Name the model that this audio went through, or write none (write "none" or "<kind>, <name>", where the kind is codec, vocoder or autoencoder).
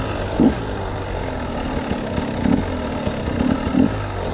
none